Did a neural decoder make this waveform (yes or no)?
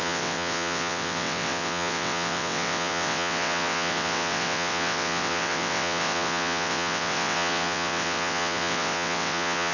yes